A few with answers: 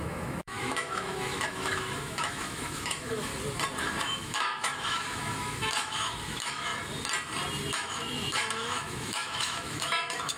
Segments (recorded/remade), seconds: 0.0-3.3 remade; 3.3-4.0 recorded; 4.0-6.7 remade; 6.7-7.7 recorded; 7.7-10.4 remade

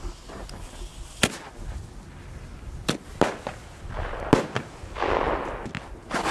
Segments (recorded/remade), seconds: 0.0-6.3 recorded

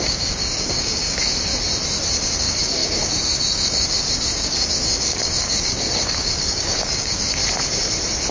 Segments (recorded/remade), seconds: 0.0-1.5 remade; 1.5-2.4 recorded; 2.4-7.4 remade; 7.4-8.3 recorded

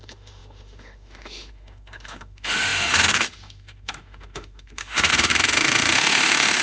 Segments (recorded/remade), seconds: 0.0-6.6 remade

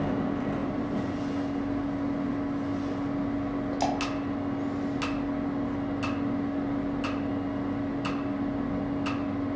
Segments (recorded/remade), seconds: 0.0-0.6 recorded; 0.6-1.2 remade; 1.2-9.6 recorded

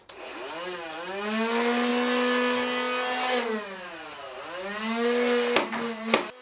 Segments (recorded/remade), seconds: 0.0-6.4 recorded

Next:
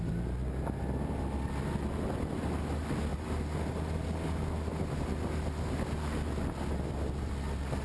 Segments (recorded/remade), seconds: 0.0-7.8 recorded